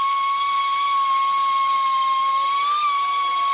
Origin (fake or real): real